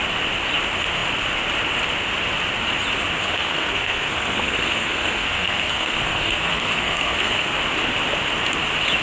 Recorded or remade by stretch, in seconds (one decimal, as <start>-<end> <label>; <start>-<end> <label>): 0.0-3.2 recorded; 3.2-7.6 remade; 7.6-9.0 recorded